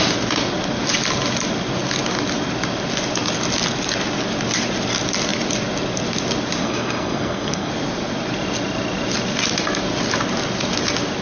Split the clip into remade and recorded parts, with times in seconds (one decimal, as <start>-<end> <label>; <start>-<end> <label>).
0.0-6.6 recorded; 6.6-7.7 remade; 7.7-11.2 recorded